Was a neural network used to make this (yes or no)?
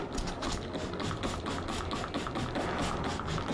no